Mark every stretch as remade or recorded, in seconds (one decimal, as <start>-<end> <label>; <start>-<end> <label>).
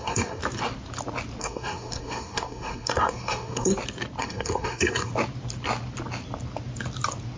0.0-0.4 remade; 0.4-1.4 recorded; 1.4-3.7 remade; 3.7-4.2 recorded; 4.2-5.1 remade; 5.1-7.4 recorded